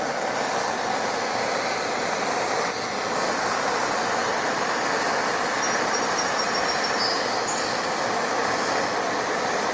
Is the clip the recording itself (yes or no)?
yes